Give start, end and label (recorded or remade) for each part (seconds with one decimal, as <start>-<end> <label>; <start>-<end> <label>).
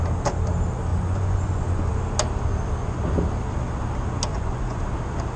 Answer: 0.0-0.9 recorded; 0.9-1.9 remade; 1.9-4.3 recorded; 4.3-4.8 remade; 4.8-5.4 recorded